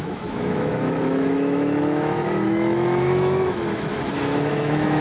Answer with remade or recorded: remade